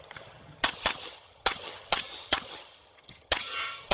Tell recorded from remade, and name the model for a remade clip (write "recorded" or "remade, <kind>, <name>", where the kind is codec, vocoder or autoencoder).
remade, vocoder, HiFi-GAN